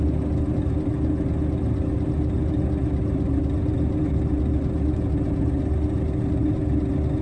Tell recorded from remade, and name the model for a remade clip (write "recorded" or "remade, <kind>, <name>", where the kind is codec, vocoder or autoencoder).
recorded